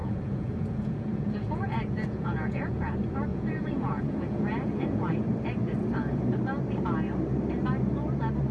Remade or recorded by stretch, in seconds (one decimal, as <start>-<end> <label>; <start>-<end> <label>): 0.0-2.9 remade; 2.9-3.3 recorded; 3.3-5.1 remade; 5.1-8.5 recorded

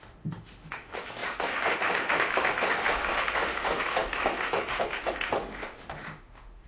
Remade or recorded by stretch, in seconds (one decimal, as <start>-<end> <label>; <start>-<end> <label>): 0.0-6.7 remade

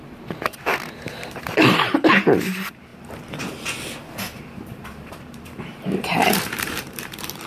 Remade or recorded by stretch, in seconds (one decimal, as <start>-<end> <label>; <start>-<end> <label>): 0.0-0.7 remade; 0.7-1.4 recorded; 1.4-2.9 remade; 2.9-4.2 recorded; 4.2-7.5 remade